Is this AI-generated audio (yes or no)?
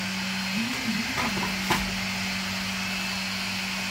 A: no